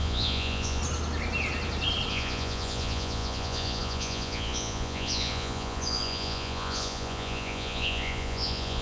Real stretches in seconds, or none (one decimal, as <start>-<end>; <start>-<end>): 0.8-2.1